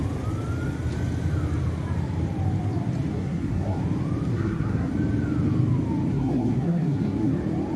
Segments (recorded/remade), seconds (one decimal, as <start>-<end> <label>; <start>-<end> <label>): 0.0-3.1 recorded; 3.1-3.8 remade; 3.8-4.3 recorded; 4.3-4.9 remade; 4.9-6.1 recorded; 6.1-7.3 remade; 7.3-7.8 recorded